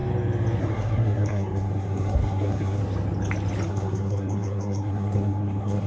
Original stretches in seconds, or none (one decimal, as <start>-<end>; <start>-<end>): 0.0-0.6; 2.8-3.7